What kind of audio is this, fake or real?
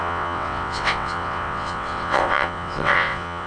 fake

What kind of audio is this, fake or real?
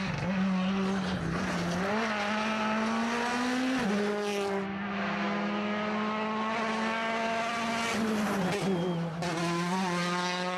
real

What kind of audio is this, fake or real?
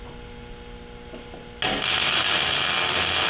real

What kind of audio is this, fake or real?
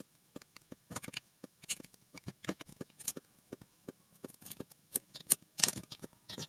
fake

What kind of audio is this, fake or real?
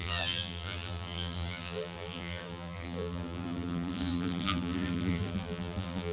fake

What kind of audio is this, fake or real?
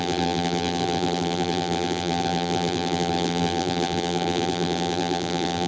fake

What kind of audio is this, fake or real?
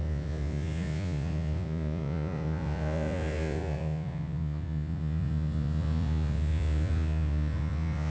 fake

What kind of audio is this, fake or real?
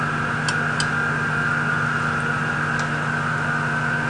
real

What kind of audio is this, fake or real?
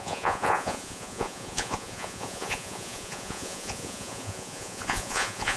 fake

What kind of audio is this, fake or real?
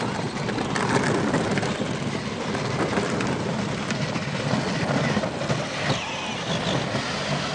real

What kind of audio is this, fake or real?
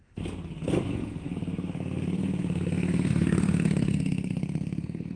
fake